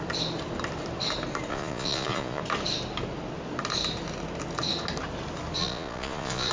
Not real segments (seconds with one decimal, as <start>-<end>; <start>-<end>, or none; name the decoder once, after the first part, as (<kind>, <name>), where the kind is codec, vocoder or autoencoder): 1.5-2.4 (vocoder, Vocos); 5.6-6.5